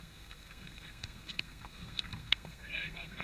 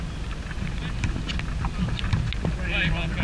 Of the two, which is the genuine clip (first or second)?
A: second